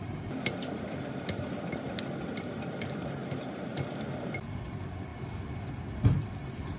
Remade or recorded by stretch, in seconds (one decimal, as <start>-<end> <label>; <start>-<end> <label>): 0.0-3.2 remade; 3.2-3.9 recorded; 3.9-5.1 remade; 5.1-5.8 recorded; 5.8-6.8 remade